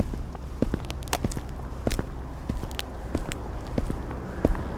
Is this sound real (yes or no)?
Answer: yes